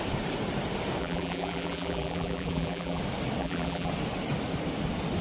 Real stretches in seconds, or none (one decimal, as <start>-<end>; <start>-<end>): 0.0-1.0; 3.0-3.4; 3.9-5.2